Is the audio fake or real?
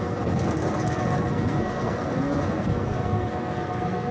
fake